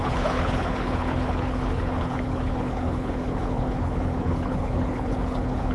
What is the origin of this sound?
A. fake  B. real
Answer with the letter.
A